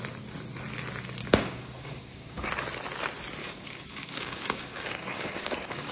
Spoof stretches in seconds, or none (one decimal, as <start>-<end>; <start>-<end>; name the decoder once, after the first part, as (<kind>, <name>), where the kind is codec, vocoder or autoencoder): 1.2-2.5 (codec, DAC); 3.4-5.9